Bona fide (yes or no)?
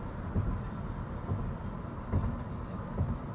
yes